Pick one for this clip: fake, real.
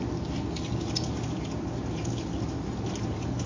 real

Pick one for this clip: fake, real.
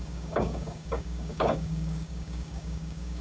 fake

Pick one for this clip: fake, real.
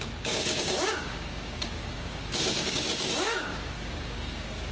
fake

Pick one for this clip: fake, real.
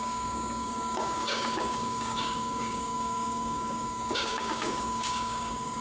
fake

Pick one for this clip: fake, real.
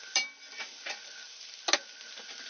real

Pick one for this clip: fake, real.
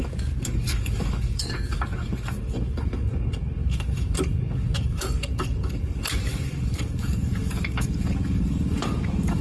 fake